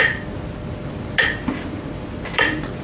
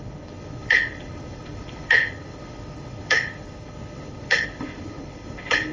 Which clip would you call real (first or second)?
first